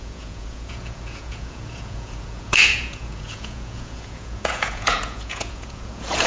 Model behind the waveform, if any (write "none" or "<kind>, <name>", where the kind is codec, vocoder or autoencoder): vocoder, Vocos